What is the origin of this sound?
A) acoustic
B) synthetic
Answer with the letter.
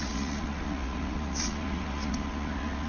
B